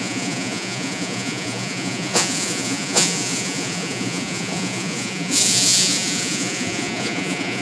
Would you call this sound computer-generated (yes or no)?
yes